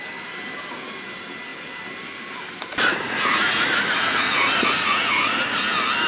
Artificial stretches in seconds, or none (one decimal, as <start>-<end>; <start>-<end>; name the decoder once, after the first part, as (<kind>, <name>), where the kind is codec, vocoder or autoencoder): 2.7-5.6 (vocoder, Vocos)